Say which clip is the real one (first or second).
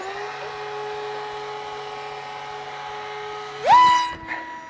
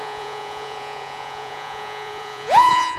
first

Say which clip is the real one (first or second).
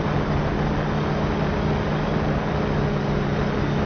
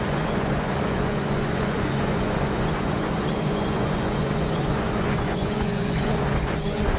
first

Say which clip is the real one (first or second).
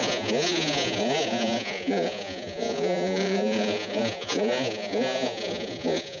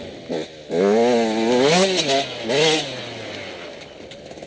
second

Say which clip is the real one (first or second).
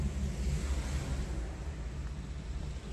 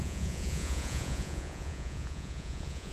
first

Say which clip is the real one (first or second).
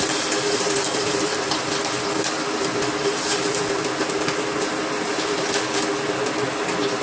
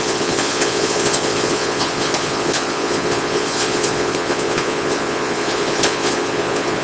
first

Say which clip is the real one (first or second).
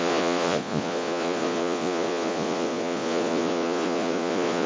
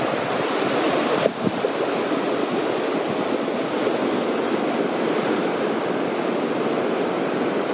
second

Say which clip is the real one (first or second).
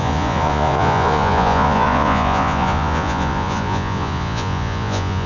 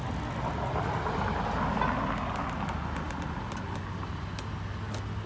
second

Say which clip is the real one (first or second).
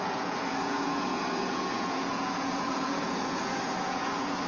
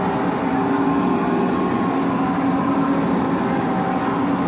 second